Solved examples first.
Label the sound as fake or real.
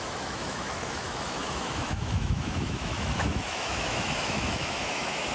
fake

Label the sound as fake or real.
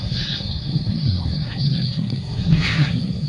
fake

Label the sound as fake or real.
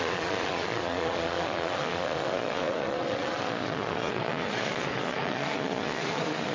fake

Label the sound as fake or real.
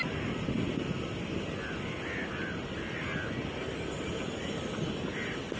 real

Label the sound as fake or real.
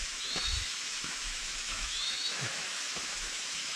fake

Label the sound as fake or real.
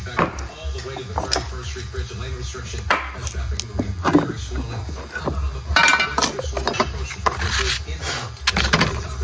real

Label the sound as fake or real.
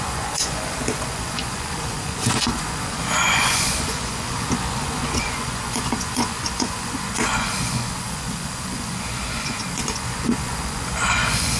fake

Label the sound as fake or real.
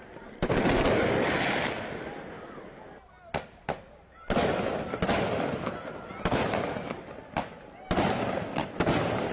real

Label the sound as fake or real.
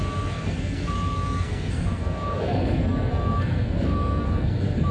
fake